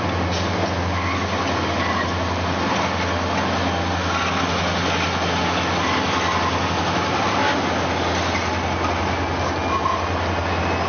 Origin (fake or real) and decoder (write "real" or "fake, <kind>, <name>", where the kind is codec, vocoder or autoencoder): real